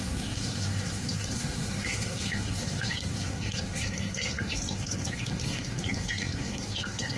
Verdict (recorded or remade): remade